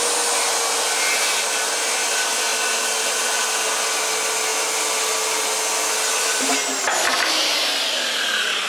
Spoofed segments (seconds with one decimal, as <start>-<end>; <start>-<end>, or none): none